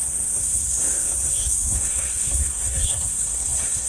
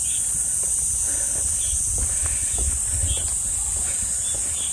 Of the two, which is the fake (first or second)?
first